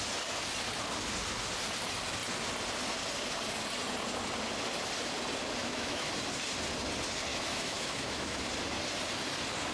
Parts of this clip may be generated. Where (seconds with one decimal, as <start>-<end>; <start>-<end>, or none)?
5.6-6.1; 7.3-8.4